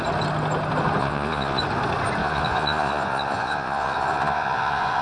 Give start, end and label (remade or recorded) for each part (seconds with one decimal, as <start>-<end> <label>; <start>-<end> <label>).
0.0-1.0 recorded; 1.0-1.6 remade; 1.6-2.2 recorded; 2.2-5.0 remade